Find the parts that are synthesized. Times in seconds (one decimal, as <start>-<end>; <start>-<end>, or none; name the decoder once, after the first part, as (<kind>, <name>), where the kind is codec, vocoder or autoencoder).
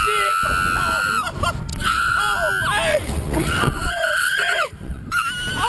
1.7-2.2 (vocoder, WaveNeXt); 2.9-5.0